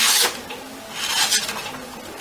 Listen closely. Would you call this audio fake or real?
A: real